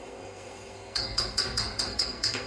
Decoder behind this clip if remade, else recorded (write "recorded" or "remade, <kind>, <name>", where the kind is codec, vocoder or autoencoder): remade, codec, SNAC